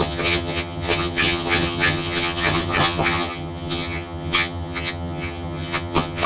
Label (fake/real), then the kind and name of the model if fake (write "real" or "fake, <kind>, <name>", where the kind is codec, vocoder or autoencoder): fake, vocoder, HiFi-GAN